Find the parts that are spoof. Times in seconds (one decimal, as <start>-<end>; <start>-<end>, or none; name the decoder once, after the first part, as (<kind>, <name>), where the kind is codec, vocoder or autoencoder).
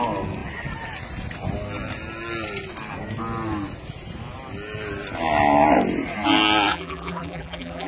6.7-7.9 (vocoder, BigVGAN v2)